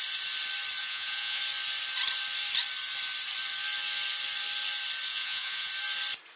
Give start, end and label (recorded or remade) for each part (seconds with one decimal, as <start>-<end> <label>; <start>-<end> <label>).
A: 0.0-0.8 recorded; 0.8-1.4 remade; 1.4-5.1 recorded; 5.1-5.7 remade; 5.7-6.4 recorded